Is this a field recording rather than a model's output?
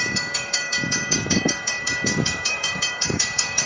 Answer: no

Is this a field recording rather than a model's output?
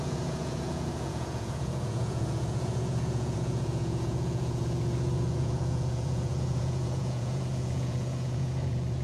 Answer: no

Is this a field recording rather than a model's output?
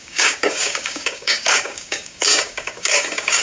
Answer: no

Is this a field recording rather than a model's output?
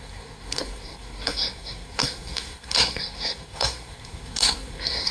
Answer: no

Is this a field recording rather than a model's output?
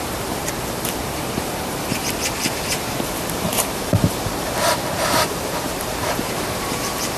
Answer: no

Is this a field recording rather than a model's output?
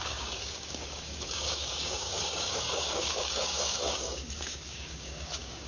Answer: no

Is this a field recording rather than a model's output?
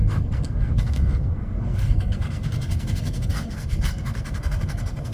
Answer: no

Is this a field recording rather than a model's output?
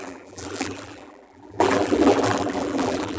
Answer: no